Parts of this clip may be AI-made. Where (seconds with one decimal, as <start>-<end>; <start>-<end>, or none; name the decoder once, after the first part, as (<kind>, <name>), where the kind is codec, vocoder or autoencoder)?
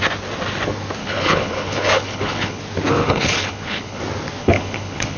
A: 1.0-2.6 (codec, HILCodec); 3.0-4.0; 4.4-5.2